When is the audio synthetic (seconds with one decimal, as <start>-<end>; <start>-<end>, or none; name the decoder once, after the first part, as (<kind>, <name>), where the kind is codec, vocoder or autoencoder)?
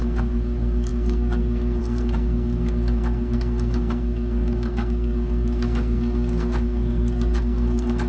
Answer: 0.0-8.1 (codec, SNAC)